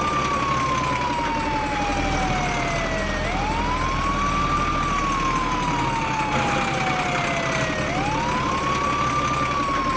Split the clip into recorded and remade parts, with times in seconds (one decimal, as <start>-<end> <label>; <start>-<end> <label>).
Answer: 0.0-10.0 recorded